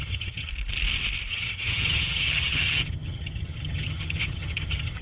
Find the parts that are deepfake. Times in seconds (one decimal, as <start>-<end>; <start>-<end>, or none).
0.0-0.5; 1.3-5.0